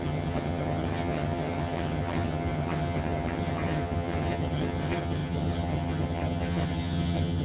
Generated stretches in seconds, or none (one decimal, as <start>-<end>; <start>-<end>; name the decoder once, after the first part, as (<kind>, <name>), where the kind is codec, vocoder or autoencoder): 0.0-7.4 (vocoder, HiFi-GAN)